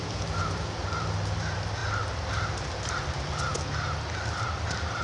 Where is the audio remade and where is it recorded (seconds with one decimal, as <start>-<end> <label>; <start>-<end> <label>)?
0.0-3.5 remade; 3.5-4.3 recorded; 4.3-5.0 remade